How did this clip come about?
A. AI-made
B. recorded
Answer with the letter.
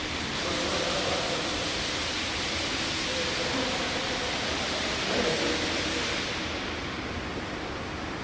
B